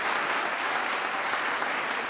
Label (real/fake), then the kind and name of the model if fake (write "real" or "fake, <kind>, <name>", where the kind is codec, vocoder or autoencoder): real